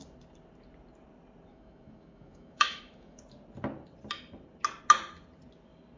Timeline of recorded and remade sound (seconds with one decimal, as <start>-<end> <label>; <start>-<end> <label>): 0.0-1.5 recorded; 1.5-3.2 remade; 3.2-6.0 recorded

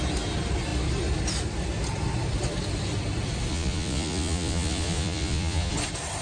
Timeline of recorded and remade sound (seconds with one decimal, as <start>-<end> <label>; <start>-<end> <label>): 0.0-3.5 recorded; 3.5-5.7 remade; 5.7-6.2 recorded